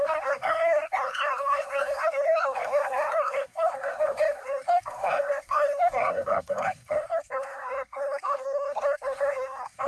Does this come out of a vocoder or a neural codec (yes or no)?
yes